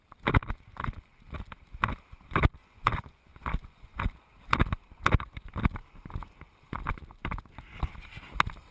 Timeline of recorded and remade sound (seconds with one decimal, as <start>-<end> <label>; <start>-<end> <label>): 0.0-2.6 recorded; 2.6-4.0 remade; 4.0-8.7 recorded